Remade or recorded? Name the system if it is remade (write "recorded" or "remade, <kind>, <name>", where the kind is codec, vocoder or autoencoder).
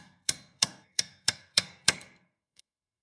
remade, codec, SNAC